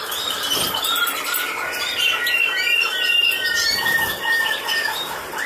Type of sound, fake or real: fake